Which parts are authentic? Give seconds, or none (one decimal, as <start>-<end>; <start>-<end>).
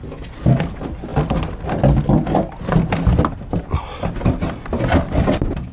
0.0-5.7